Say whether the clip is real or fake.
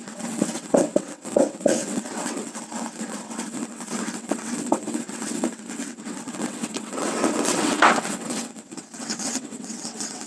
fake